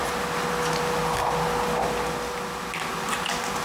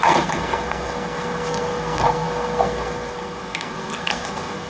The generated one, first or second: second